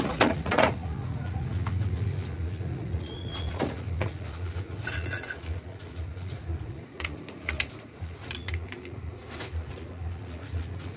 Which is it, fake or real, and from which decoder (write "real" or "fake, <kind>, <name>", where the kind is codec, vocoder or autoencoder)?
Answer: fake, vocoder, Vocos